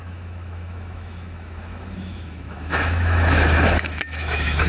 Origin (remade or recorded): remade